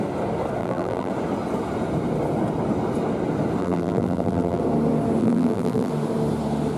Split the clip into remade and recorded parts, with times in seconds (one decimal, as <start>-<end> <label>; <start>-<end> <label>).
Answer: 0.0-0.6 recorded; 0.6-1.1 remade; 1.1-3.6 recorded; 3.6-4.6 remade; 4.6-5.2 recorded; 5.2-5.9 remade; 5.9-6.8 recorded